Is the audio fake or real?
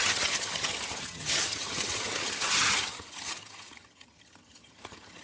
fake